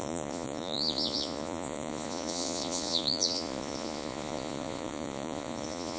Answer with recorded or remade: remade